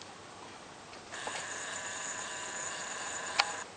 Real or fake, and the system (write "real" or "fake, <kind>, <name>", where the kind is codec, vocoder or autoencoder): real